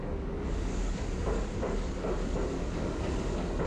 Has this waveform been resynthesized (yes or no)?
yes